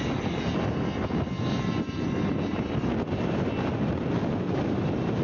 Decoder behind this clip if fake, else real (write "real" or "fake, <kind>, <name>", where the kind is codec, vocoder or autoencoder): real